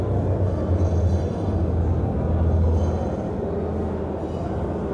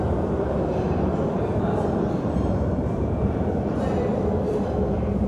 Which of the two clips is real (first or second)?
first